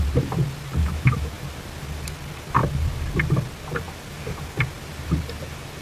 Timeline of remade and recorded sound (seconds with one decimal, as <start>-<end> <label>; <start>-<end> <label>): 0.0-0.8 recorded; 0.8-1.3 remade; 1.3-5.8 recorded